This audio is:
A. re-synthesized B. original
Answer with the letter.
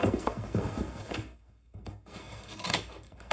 A